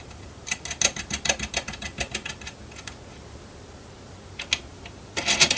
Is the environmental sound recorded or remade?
recorded